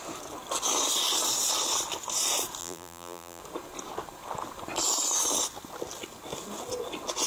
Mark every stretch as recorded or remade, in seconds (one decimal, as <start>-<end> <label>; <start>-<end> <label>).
0.0-2.6 recorded; 2.6-3.4 remade; 3.4-7.3 recorded